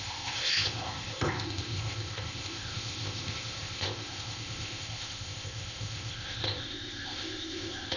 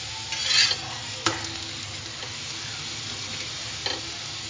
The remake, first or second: first